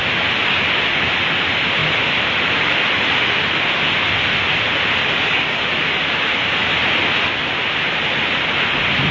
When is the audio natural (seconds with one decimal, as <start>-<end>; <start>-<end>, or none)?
0.0-5.0; 5.6-9.1